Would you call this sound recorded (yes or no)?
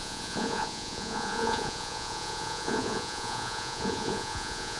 no